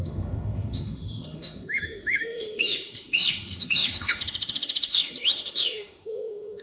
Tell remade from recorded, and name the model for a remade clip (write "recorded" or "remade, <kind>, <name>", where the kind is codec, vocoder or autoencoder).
remade, autoencoder, DAC-VAE